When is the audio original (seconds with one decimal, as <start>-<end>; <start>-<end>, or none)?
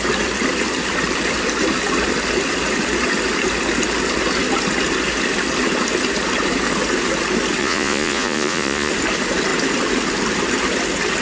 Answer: 0.0-7.6; 8.9-11.2